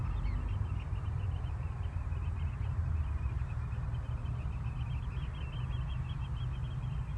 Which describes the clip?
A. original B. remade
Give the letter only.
A